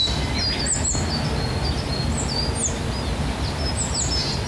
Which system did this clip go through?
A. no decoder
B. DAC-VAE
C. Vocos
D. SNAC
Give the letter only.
A